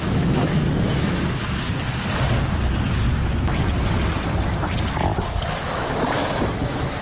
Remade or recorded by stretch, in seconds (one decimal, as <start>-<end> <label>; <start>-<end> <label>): 0.0-1.4 remade; 1.4-5.6 recorded; 5.6-7.0 remade